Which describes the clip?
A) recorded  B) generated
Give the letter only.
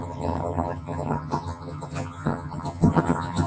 B